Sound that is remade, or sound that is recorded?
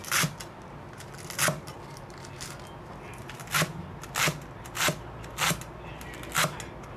recorded